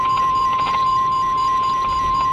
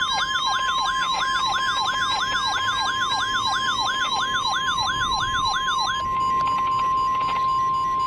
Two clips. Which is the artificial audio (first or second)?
first